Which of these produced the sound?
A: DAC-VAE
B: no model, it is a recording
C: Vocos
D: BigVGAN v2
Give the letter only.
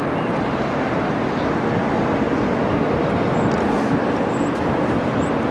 B